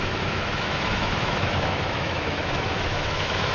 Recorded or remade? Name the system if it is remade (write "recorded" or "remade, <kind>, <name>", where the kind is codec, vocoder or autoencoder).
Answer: remade, autoencoder, DAC-VAE